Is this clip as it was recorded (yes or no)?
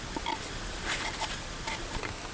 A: yes